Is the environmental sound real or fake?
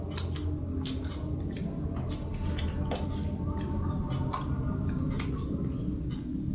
real